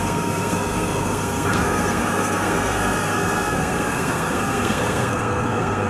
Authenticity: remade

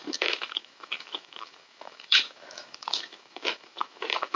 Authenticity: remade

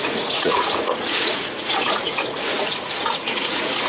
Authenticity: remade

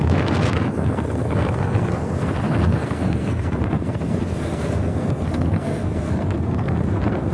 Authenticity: remade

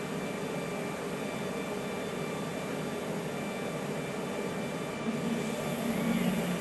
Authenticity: recorded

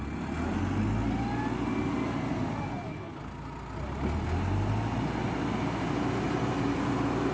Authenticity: recorded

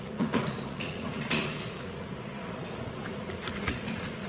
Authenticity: remade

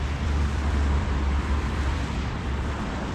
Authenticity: remade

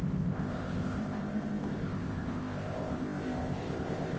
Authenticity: remade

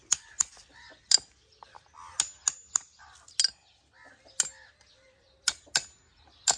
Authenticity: recorded